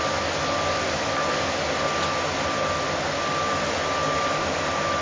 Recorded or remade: recorded